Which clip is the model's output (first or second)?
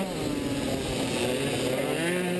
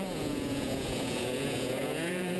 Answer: second